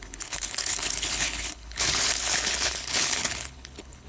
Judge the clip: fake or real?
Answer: fake